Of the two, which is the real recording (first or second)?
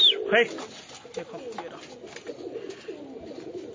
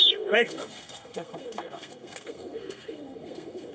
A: first